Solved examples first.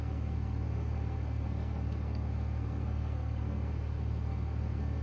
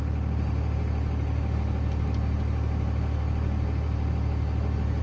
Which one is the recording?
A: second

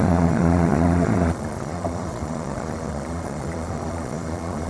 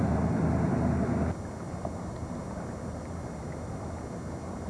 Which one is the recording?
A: second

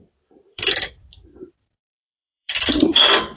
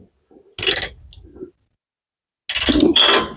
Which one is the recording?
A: second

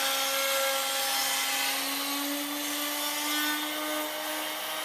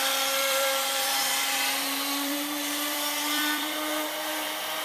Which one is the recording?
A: first